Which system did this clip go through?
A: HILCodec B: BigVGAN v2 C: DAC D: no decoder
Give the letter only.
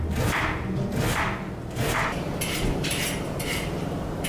D